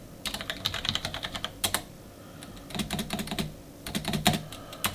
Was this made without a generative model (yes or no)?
yes